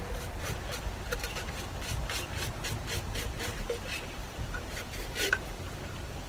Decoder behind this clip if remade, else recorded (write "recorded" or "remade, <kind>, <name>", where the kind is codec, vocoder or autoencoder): recorded